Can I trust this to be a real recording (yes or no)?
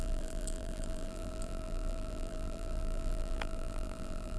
no